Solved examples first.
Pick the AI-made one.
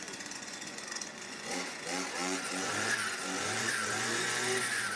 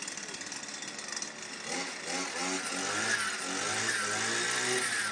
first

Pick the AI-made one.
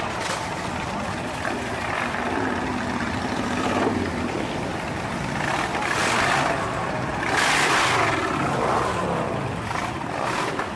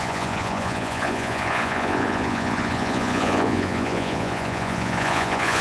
second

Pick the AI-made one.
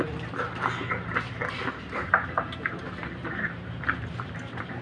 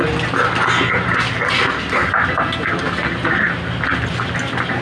first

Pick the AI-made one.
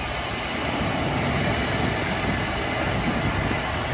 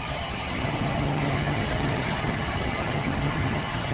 second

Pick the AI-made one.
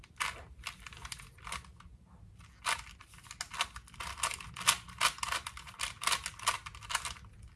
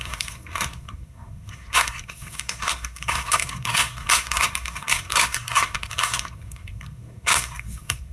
second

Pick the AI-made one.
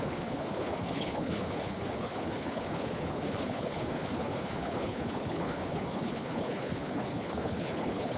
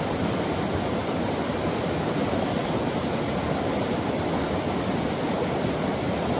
first